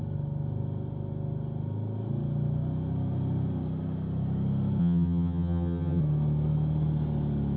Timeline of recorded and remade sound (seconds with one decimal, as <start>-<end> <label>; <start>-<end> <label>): 0.0-4.8 recorded; 4.8-6.0 remade; 6.0-7.6 recorded